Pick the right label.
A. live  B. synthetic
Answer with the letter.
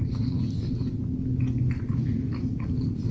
A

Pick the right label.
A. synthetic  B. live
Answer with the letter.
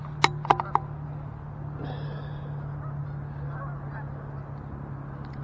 B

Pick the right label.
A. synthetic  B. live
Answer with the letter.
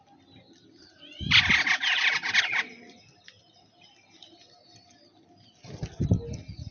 B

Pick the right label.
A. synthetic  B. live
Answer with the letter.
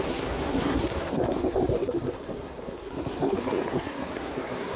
A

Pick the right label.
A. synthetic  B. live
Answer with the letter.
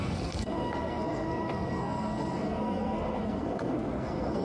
A